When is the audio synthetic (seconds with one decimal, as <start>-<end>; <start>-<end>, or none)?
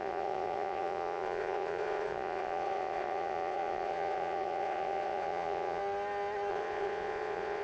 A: 0.0-5.8; 6.5-7.6